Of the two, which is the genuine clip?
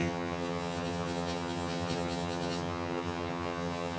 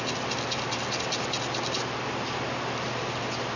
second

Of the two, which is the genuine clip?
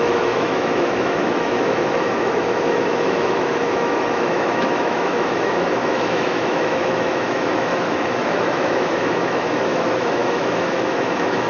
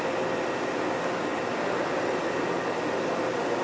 second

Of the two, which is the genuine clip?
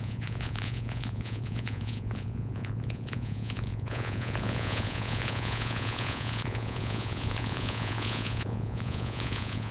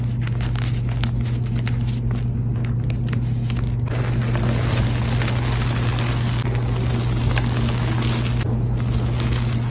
second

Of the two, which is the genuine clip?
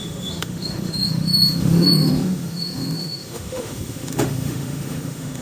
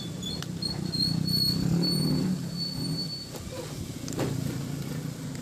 second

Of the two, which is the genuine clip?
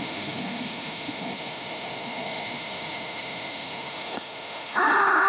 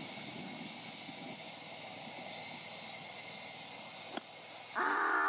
second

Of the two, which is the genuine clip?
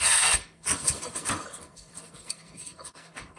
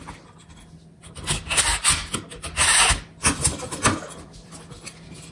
second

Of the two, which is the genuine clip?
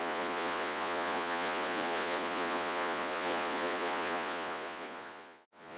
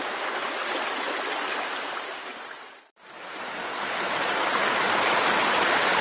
second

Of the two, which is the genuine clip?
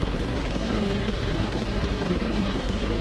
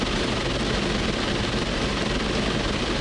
second